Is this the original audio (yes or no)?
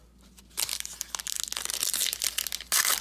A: yes